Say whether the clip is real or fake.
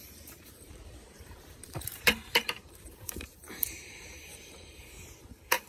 fake